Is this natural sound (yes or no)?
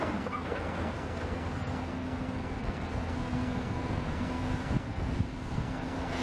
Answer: no